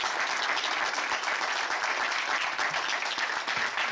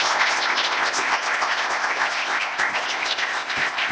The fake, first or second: second